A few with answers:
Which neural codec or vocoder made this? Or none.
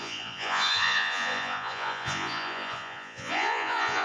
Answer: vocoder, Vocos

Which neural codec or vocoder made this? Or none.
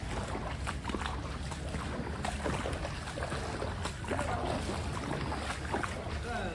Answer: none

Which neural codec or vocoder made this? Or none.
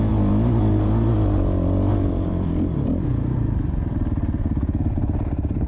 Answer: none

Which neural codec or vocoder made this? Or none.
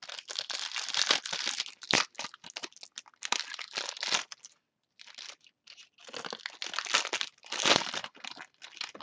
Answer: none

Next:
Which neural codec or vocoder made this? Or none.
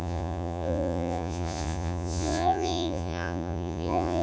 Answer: vocoder, Vocos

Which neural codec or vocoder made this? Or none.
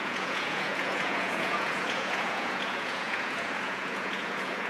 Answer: vocoder, Vocos